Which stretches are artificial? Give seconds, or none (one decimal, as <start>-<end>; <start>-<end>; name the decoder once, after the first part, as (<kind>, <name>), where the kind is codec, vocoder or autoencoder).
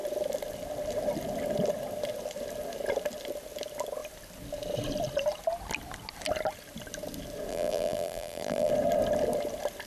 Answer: 7.5-8.7 (vocoder, BigVGAN v2)